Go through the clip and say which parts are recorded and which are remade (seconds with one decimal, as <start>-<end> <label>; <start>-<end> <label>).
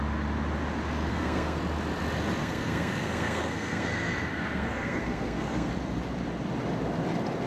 0.0-1.1 recorded; 1.1-1.6 remade; 1.6-2.4 recorded; 2.4-5.7 remade; 5.7-7.5 recorded